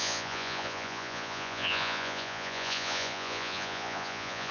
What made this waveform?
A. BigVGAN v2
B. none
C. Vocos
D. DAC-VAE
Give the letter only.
C